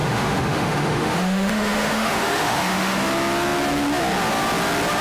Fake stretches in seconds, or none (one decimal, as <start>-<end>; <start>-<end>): 0.0-3.0